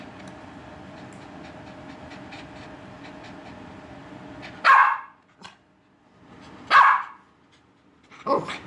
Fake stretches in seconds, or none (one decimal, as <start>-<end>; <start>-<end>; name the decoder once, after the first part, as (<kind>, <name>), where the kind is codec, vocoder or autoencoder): none